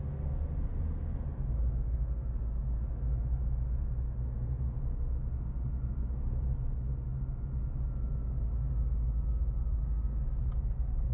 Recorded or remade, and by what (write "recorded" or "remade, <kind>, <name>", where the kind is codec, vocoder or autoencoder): recorded